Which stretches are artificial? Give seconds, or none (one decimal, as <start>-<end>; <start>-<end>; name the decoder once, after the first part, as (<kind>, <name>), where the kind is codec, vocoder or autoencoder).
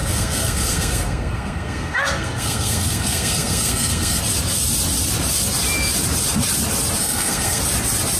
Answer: 0.0-4.2 (codec, SNAC); 7.0-7.6